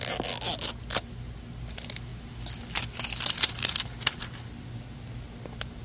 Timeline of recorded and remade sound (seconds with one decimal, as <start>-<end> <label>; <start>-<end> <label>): 0.0-5.8 recorded